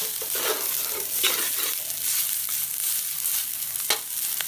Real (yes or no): yes